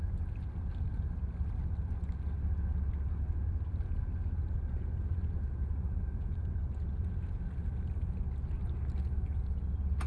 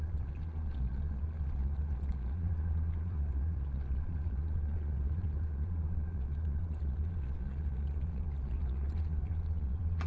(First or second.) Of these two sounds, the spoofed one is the second